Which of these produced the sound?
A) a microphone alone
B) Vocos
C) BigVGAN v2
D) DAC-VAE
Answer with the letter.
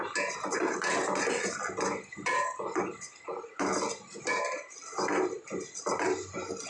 A